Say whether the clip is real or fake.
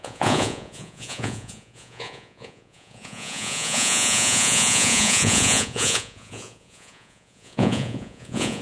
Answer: fake